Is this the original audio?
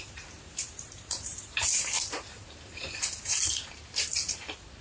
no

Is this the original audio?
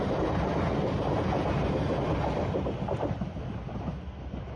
yes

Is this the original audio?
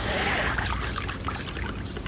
yes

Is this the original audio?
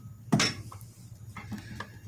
yes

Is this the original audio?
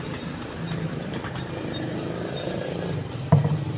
no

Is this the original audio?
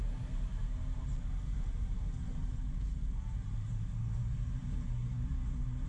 no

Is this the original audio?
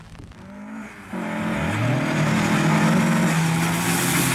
yes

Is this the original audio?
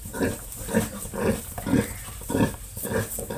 no